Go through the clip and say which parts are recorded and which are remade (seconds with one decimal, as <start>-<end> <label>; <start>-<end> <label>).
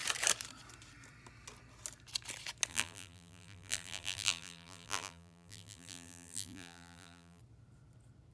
0.0-2.7 recorded; 2.7-7.4 remade; 7.4-8.3 recorded